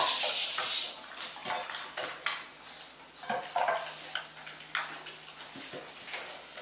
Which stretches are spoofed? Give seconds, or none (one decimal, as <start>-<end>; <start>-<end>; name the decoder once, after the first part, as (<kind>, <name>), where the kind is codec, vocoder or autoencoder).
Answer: none